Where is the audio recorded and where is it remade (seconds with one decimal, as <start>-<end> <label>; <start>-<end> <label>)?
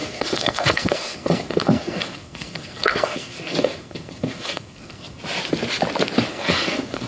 0.0-5.2 remade; 5.2-6.3 recorded; 6.3-7.1 remade